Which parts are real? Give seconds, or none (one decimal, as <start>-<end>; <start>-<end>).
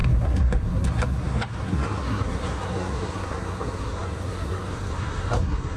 none